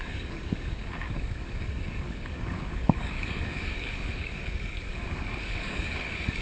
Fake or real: fake